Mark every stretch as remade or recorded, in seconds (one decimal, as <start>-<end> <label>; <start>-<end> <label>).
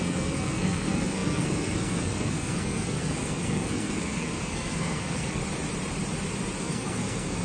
0.0-5.4 remade; 5.4-6.6 recorded; 6.6-7.4 remade